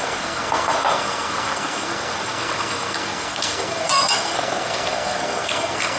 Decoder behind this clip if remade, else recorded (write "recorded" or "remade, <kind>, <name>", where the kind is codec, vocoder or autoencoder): remade, codec, SNAC